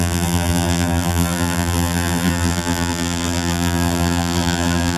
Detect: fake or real fake